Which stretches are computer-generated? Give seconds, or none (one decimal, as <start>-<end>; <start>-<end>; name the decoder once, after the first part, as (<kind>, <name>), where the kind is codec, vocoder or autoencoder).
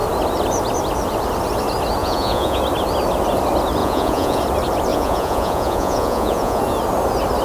2.0-2.6 (vocoder, Vocos); 3.8-4.4; 4.9-6.6